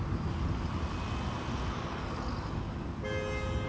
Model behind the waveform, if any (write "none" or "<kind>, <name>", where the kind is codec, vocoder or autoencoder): none